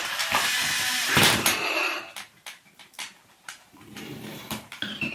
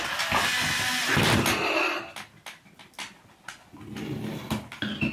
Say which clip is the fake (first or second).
first